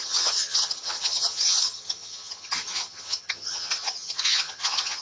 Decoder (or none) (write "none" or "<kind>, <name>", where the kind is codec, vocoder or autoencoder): vocoder, HiFi-GAN